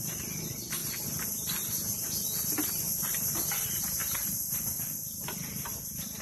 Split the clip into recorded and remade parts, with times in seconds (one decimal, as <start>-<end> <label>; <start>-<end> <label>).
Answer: 0.0-0.8 remade; 0.8-3.5 recorded; 3.5-6.2 remade